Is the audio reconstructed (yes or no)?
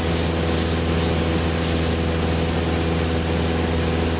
no